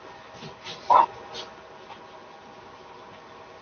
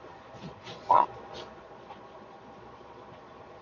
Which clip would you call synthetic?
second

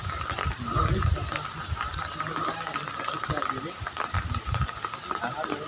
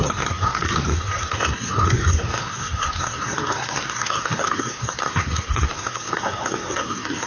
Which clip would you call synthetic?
second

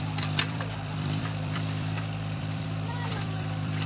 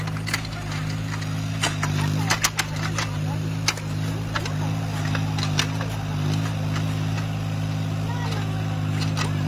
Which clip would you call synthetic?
first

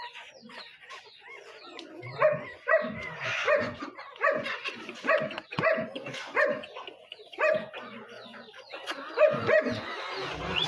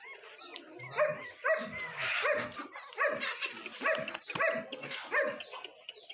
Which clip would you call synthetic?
first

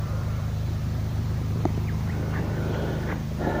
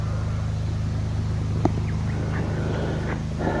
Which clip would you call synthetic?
first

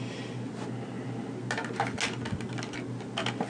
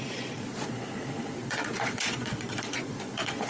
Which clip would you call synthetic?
second